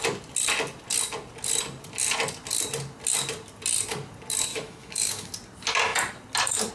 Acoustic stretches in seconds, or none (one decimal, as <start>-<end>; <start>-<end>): 0.0-4.5; 5.3-6.7